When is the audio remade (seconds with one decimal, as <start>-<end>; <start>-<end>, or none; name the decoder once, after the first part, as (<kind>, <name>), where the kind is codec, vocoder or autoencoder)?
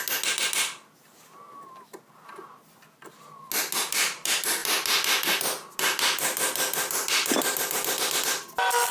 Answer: none